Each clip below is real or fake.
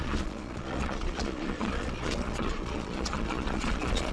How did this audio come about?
fake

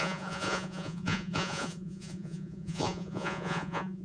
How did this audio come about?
fake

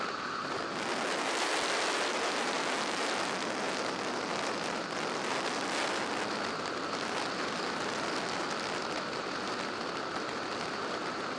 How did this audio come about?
real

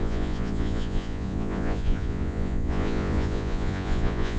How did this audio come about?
fake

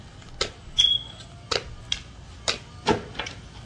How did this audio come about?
real